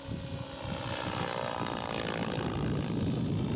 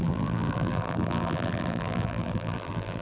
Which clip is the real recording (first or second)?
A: first